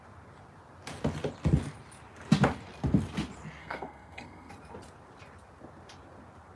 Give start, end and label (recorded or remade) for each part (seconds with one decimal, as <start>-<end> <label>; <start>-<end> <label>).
0.0-3.6 recorded; 3.6-4.5 remade; 4.5-6.6 recorded